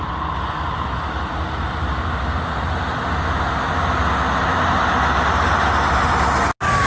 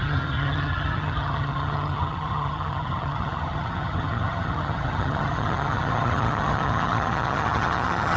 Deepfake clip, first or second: second